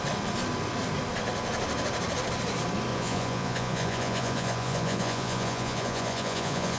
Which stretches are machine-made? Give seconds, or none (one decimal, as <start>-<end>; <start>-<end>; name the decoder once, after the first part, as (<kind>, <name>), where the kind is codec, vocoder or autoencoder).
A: 2.9-6.8 (vocoder, Vocos)